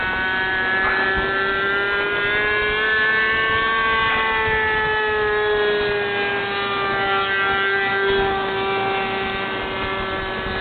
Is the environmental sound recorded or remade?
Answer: recorded